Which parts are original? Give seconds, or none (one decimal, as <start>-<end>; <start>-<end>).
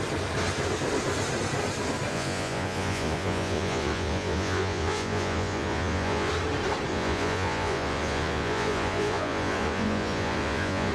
0.0-2.1; 6.3-6.9